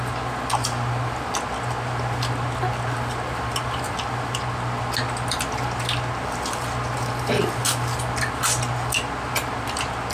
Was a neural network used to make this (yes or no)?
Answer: no